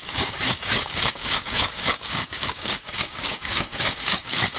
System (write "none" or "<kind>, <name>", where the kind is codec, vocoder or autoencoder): codec, DAC